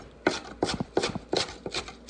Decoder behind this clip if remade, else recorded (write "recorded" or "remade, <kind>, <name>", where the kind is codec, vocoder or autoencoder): recorded